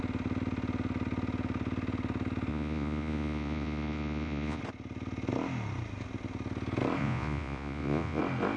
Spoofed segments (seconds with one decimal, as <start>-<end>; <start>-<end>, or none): 2.5-4.6; 7.0-8.2